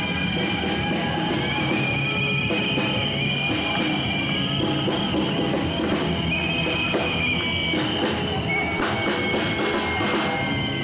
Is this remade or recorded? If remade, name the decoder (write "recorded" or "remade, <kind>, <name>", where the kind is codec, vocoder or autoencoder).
recorded